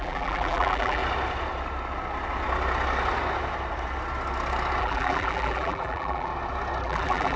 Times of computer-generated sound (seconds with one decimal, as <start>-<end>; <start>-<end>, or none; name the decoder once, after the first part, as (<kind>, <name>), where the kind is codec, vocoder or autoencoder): 0.0-1.0 (vocoder, BigVGAN v2); 4.8-6.3; 6.8-7.4